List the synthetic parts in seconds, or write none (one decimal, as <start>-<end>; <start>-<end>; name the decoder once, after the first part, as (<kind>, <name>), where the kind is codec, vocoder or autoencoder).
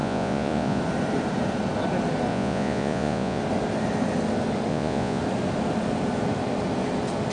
0.0-0.8 (vocoder, Vocos); 2.3-3.4; 4.7-5.2